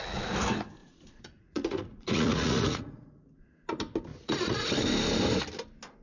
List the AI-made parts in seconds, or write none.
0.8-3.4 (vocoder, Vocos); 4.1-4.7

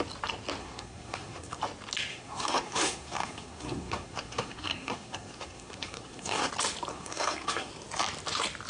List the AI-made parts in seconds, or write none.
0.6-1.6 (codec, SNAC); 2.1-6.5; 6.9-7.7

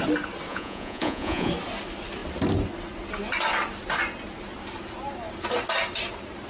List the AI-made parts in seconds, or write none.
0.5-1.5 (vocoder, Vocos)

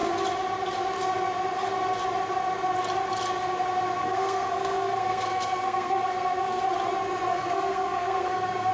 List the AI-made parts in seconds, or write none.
4.0-6.6 (codec, SNAC); 7.3-8.7

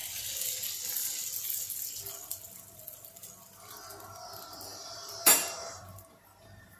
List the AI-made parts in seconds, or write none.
4.7-6.8 (vocoder, BigVGAN v2)